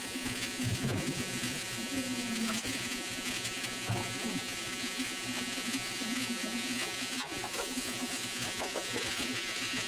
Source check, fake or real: fake